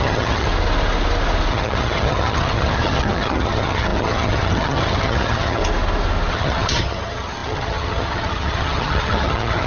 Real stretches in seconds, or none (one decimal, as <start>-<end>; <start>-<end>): 0.5-1.5; 5.6-6.3